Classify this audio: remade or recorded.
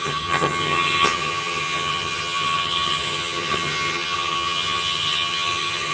remade